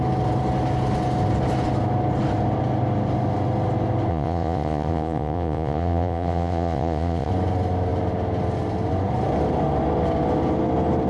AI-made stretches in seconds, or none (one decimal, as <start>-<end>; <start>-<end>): 4.1-7.3